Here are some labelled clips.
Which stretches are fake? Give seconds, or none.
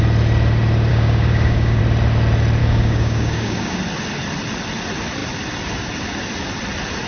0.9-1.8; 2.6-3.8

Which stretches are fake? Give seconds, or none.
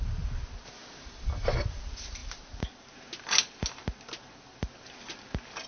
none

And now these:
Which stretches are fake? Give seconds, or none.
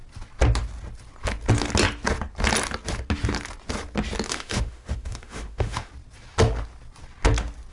4.3-5.9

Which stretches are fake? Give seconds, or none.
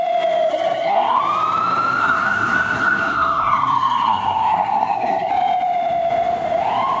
0.5-1.2; 2.0-5.3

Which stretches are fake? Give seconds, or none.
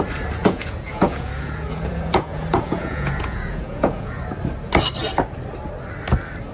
0.4-4.2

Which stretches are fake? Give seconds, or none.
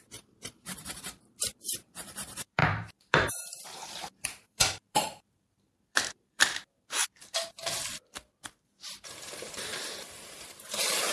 0.0-7.0; 8.4-11.1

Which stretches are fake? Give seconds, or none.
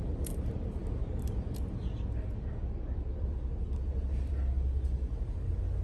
none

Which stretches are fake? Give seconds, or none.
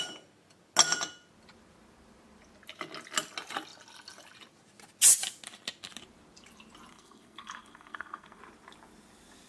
6.9-8.4